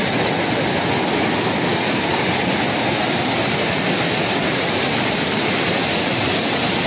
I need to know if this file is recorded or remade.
recorded